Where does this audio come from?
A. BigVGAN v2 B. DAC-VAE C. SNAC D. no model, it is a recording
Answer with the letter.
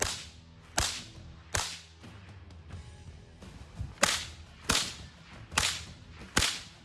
D